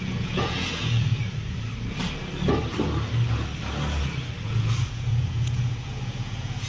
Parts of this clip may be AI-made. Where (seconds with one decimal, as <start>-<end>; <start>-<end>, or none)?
0.0-1.1; 4.5-6.7